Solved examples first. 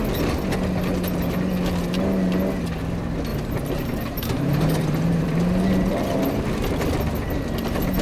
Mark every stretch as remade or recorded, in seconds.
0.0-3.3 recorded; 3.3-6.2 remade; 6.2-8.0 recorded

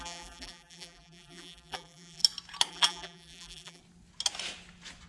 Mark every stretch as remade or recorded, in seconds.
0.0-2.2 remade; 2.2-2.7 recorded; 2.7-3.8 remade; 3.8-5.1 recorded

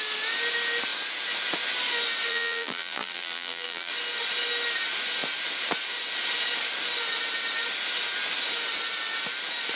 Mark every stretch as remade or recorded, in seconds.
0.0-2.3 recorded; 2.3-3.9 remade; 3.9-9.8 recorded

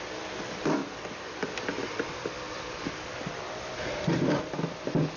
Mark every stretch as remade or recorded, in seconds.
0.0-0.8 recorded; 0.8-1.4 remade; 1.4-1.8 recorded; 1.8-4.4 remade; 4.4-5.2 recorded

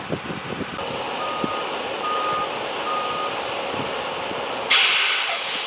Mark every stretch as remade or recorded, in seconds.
0.0-0.4 recorded; 0.4-3.8 remade; 3.8-5.7 recorded

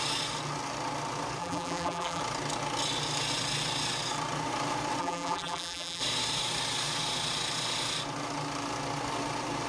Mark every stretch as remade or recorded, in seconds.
0.0-1.4 recorded; 1.4-2.2 remade; 2.2-5.0 recorded; 5.0-6.0 remade; 6.0-9.7 recorded